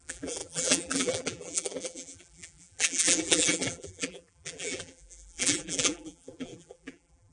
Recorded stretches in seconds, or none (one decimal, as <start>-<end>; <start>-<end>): none